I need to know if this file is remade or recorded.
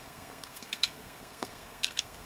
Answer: remade